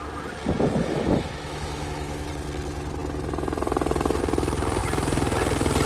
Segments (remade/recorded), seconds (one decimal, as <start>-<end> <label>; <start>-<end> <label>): 0.0-0.8 recorded; 0.8-2.3 remade; 2.3-5.9 recorded